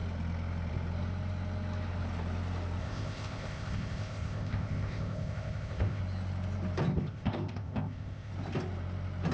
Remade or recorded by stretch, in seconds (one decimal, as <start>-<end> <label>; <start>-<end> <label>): 0.0-2.8 recorded; 2.8-6.0 remade; 6.0-6.9 recorded; 6.9-8.3 remade; 8.3-9.3 recorded